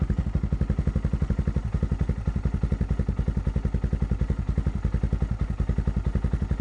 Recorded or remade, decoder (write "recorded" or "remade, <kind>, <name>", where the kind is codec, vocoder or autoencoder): recorded